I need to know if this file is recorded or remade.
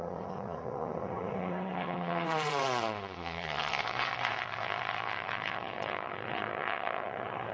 remade